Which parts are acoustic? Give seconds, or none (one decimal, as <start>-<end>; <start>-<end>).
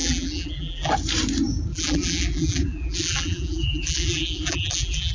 0.9-1.7